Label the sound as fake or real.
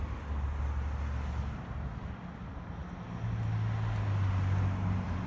real